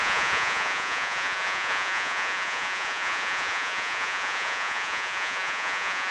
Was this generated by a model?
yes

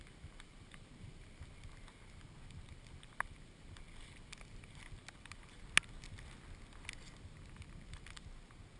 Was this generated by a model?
no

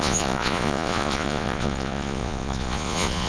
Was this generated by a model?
yes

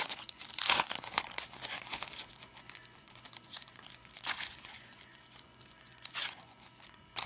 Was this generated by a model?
yes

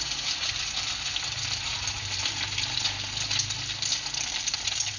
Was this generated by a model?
no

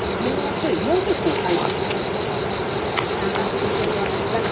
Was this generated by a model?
no